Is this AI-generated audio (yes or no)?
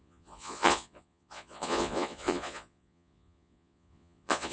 yes